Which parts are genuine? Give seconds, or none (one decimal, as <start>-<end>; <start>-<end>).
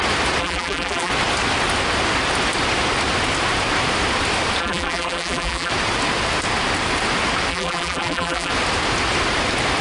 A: 0.0-0.4; 1.1-4.6; 5.7-7.5; 8.5-9.8